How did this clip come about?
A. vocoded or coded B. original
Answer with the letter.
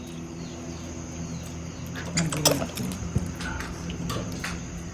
B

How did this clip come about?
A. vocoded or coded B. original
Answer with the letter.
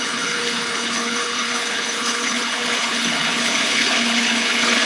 A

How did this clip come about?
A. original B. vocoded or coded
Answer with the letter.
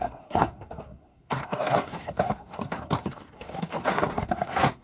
B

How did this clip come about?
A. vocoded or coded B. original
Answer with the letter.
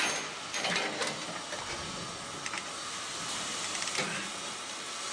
B